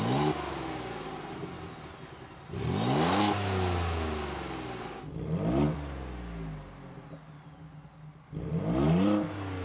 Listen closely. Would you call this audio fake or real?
real